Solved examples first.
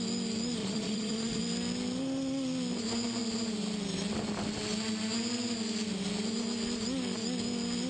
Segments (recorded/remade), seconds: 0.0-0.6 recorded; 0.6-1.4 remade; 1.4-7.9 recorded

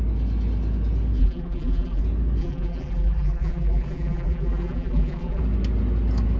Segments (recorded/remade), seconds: 0.0-1.2 recorded; 1.2-2.0 remade; 2.0-2.4 recorded; 2.4-5.4 remade; 5.4-6.4 recorded

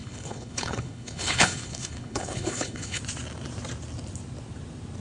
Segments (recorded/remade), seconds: 0.0-3.0 remade; 3.0-5.0 recorded

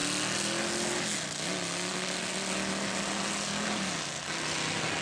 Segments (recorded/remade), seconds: 0.0-5.0 recorded

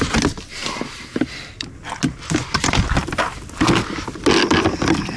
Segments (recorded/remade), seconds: 0.0-5.2 recorded

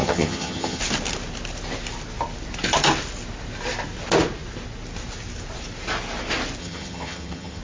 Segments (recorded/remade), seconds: 0.0-0.8 remade; 0.8-6.6 recorded; 6.6-7.6 remade